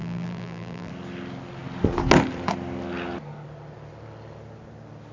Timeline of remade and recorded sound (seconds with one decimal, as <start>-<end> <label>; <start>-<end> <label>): 0.0-0.9 remade; 0.9-5.1 recorded